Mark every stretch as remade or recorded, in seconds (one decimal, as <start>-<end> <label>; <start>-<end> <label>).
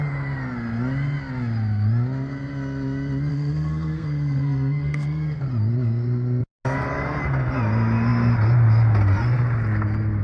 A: 0.0-3.3 recorded; 3.3-5.4 remade; 5.4-10.2 recorded